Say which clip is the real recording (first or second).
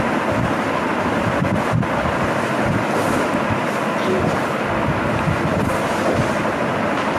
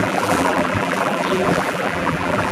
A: first